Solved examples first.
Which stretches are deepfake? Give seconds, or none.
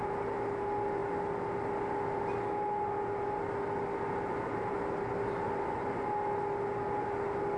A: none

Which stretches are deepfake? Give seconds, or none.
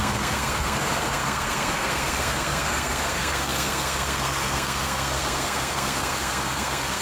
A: 0.0-7.0 (codec, SNAC)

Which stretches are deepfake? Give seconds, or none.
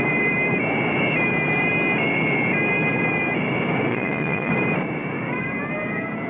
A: 3.9-4.5 (vocoder, Vocos)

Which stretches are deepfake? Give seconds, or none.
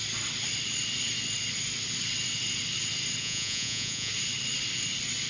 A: 3.2-4.1 (vocoder, Vocos)